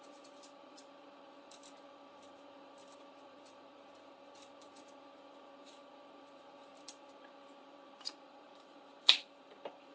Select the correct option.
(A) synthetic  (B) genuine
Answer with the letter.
A